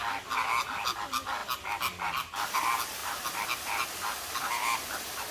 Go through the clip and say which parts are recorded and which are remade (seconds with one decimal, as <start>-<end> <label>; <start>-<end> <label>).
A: 0.0-5.3 recorded